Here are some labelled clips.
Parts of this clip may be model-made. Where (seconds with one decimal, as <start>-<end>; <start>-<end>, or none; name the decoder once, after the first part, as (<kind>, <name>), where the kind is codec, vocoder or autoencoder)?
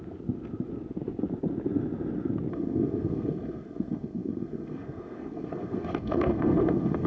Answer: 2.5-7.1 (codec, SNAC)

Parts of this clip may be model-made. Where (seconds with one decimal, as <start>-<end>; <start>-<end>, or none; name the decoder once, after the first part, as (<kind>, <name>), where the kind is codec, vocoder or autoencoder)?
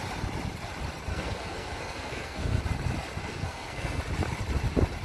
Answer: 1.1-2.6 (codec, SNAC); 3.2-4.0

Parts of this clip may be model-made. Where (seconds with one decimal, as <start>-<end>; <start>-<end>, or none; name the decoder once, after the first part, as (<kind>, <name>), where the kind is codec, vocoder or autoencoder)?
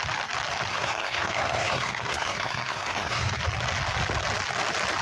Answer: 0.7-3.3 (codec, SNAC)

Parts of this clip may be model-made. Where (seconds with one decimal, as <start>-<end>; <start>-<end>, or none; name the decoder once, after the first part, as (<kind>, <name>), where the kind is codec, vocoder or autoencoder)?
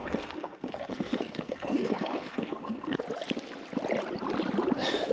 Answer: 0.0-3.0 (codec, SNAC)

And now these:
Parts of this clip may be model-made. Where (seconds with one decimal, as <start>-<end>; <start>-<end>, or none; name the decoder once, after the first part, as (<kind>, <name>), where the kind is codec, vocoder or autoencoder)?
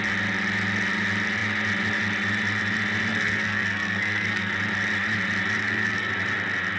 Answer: 3.1-4.5 (codec, SNAC); 5.6-6.1